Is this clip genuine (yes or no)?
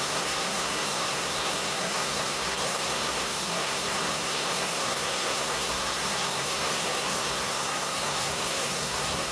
no